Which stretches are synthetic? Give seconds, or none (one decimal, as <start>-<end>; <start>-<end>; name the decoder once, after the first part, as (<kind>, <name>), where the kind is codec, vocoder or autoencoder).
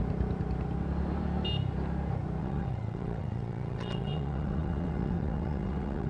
2.4-6.1 (vocoder, WaveNeXt)